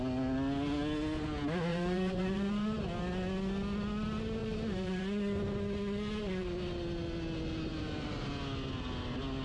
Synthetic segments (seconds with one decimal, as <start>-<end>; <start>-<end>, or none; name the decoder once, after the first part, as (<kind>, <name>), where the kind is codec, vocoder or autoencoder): 1.7-2.8 (vocoder, BigVGAN v2); 4.4-5.0; 7.7-8.3